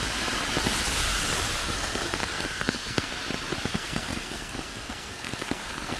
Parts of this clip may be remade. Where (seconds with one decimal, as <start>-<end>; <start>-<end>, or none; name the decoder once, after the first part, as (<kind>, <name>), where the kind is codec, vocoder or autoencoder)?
1.6-3.1 (codec, SNAC); 3.7-6.0